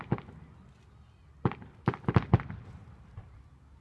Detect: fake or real real